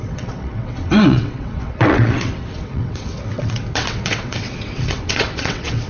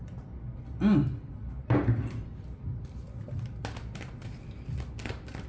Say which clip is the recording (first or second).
second